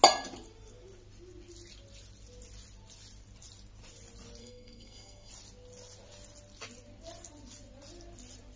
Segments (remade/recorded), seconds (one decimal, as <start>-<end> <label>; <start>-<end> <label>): 0.0-4.4 recorded; 4.4-5.3 remade; 5.3-8.6 recorded

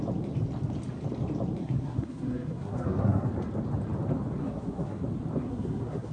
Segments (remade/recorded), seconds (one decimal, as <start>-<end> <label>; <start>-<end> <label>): 0.0-1.6 recorded; 1.6-3.3 remade; 3.3-4.4 recorded; 4.4-5.0 remade; 5.0-5.4 recorded; 5.4-6.1 remade

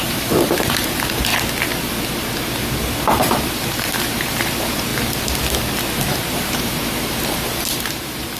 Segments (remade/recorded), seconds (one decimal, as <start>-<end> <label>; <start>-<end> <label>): 0.0-1.3 remade; 1.3-3.0 recorded; 3.0-4.9 remade; 4.9-6.1 recorded; 6.1-8.4 remade

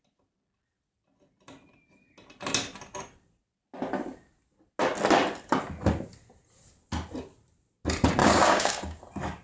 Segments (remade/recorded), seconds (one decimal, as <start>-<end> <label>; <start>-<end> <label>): 0.0-8.2 recorded; 8.2-9.0 remade; 9.0-9.4 recorded

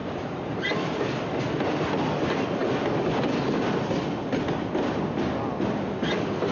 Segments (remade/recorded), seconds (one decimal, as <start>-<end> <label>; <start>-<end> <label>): 0.0-1.0 remade; 1.0-6.5 recorded